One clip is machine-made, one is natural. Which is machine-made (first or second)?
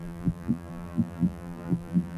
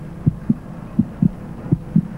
first